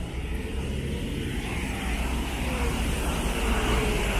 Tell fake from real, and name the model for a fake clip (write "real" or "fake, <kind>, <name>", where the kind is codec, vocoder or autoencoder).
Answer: real